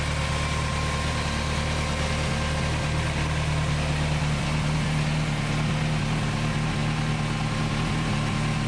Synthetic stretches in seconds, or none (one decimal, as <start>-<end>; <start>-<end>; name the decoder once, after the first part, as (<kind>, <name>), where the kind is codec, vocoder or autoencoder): none